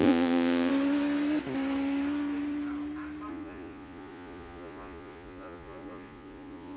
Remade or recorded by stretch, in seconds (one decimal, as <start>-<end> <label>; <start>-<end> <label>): 0.0-0.7 remade; 0.7-3.3 recorded; 3.3-6.8 remade